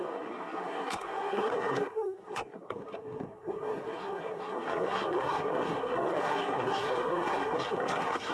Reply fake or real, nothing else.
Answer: fake